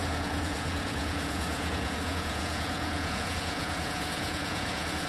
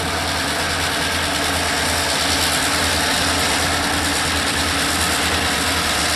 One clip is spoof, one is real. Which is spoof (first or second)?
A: first